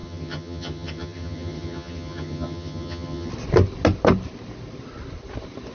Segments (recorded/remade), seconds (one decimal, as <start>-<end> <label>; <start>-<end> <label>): 0.0-3.3 remade; 3.3-5.7 recorded